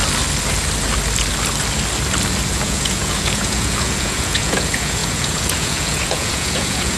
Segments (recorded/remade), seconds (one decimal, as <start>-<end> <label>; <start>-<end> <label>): 0.0-2.5 recorded; 2.5-7.0 remade